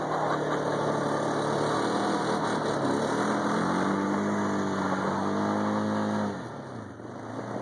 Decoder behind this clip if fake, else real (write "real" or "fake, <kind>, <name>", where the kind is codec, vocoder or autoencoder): real